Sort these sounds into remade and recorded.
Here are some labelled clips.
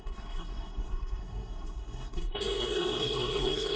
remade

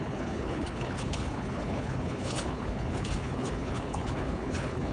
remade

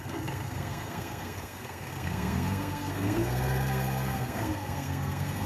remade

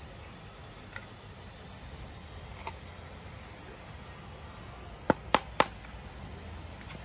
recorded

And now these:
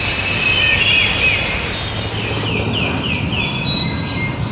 recorded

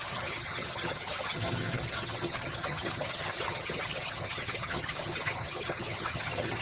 remade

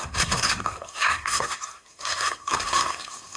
remade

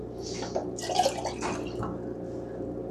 recorded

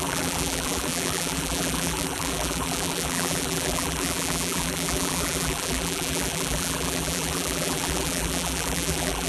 remade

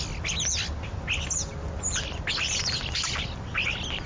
recorded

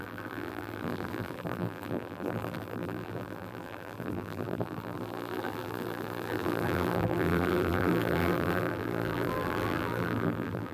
remade